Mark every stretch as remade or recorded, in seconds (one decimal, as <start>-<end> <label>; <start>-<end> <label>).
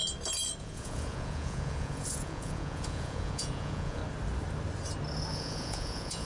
0.0-0.6 recorded; 0.6-4.0 remade; 4.0-5.3 recorded; 5.3-6.3 remade